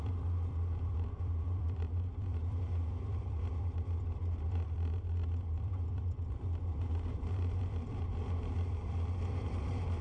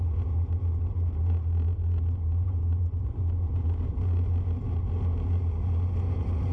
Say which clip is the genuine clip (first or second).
second